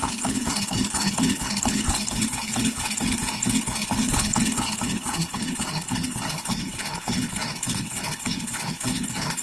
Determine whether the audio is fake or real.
fake